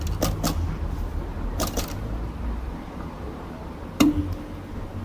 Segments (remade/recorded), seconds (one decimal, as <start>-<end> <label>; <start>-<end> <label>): 0.0-1.3 recorded; 1.3-4.2 remade; 4.2-5.0 recorded